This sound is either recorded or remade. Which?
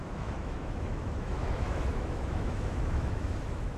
remade